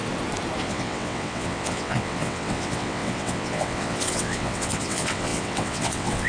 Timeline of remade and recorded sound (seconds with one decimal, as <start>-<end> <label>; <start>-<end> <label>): 0.0-0.6 recorded; 0.6-6.3 remade